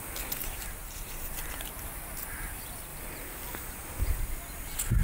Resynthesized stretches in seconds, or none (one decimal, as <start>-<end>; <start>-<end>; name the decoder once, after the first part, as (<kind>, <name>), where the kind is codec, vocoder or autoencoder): 0.4-1.8 (vocoder, BigVGAN v2)